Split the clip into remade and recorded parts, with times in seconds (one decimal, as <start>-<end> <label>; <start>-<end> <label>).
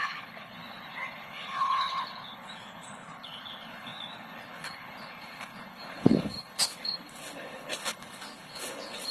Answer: 0.0-9.1 remade